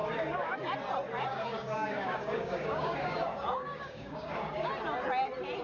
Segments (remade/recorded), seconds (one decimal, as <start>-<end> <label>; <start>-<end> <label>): 0.0-0.6 remade; 0.6-1.3 recorded; 1.3-4.7 remade; 4.7-5.6 recorded